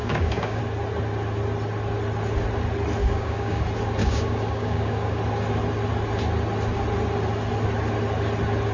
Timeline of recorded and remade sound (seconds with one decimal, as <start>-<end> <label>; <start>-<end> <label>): 0.0-0.6 remade; 0.6-3.0 recorded; 3.0-3.6 remade; 3.6-4.0 recorded; 4.0-5.2 remade; 5.2-8.7 recorded

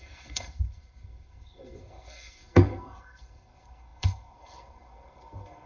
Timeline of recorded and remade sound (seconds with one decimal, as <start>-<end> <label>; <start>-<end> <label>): 0.0-5.7 remade

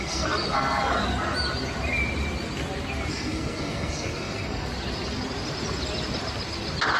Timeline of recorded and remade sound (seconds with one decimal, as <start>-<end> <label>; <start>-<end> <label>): 0.0-1.0 remade; 1.0-3.1 recorded; 3.1-4.7 remade; 4.7-7.0 recorded

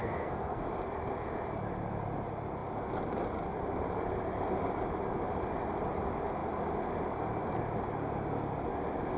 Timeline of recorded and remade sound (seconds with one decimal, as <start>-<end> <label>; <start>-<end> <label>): 0.0-0.7 remade; 0.7-9.2 recorded

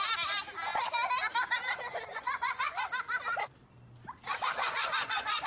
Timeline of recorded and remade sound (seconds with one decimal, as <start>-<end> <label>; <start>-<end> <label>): 0.0-2.1 recorded; 2.1-2.9 remade; 2.9-4.6 recorded; 4.6-5.5 remade

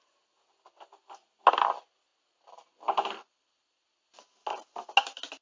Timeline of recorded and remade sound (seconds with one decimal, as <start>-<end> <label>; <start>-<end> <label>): 0.0-5.4 recorded

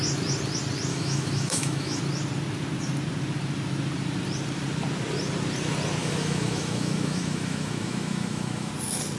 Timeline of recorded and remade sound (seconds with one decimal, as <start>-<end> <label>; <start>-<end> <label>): 0.0-0.9 recorded; 0.9-2.0 remade; 2.0-6.0 recorded; 6.0-8.7 remade; 8.7-9.2 recorded

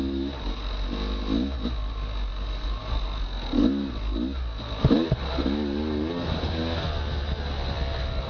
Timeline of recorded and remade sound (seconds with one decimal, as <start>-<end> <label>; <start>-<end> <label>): 0.0-8.3 recorded